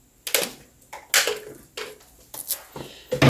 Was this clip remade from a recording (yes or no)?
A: no